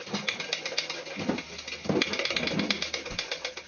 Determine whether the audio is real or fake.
real